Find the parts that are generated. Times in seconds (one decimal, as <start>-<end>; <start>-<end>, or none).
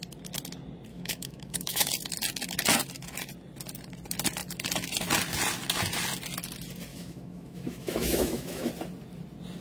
0.9-1.9; 6.9-8.7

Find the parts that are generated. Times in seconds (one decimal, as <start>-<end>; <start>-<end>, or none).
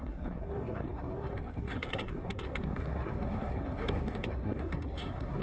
0.0-5.4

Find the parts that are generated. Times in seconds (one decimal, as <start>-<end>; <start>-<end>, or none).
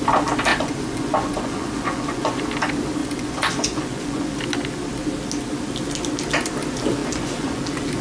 0.5-2.4; 3.0-4.4; 7.0-7.6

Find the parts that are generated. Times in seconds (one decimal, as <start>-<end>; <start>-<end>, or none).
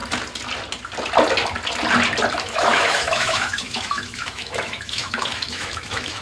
2.4-6.2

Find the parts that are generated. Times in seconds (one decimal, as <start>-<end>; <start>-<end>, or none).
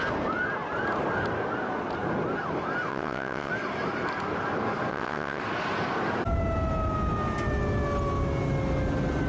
2.9-3.5; 4.9-5.4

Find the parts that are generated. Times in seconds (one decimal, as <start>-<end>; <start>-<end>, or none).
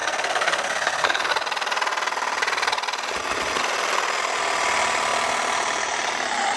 0.0-1.3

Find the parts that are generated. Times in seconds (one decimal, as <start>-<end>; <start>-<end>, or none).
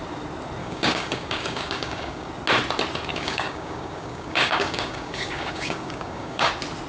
0.6-2.3; 3.1-6.5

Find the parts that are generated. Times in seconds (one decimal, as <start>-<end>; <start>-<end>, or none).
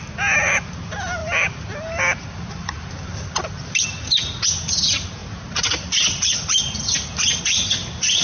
none